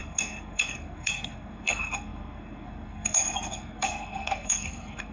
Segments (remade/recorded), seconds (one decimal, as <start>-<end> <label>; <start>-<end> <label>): 0.0-5.1 remade